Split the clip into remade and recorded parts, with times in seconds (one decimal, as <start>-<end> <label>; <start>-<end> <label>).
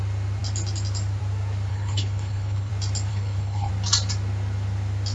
0.0-1.7 recorded; 1.7-2.7 remade; 2.7-3.1 recorded; 3.1-3.7 remade; 3.7-5.1 recorded